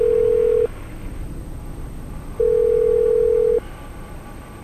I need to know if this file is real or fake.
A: real